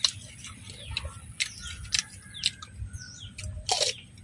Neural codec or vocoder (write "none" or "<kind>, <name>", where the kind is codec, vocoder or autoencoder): none